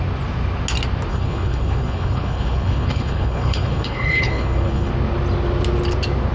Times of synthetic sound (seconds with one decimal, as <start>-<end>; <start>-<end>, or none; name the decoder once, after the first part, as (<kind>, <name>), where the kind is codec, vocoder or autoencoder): 1.1-4.9 (codec, HILCodec)